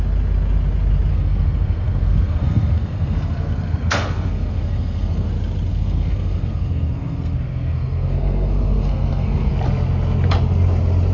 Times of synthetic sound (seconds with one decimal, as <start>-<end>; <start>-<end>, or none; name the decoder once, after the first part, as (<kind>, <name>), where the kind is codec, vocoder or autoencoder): 1.1-5.3 (codec, SNAC); 5.7-9.5